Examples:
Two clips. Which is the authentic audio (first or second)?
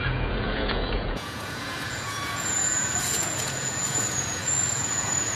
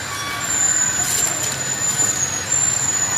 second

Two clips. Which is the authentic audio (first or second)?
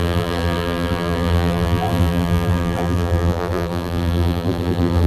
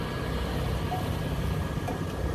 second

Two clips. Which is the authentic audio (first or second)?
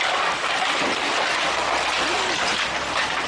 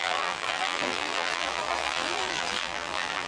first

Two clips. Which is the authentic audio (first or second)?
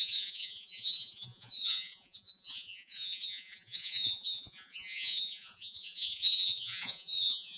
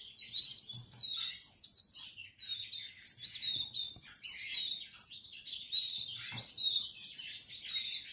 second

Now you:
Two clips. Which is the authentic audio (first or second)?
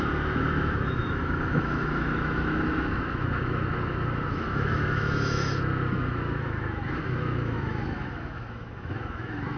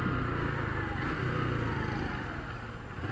second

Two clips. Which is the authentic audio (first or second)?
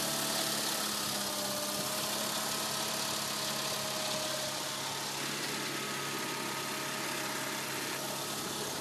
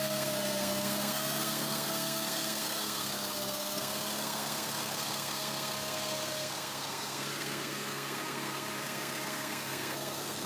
first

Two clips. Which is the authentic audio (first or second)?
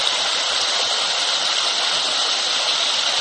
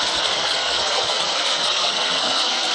first